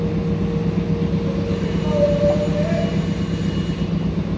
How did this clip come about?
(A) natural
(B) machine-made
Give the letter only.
A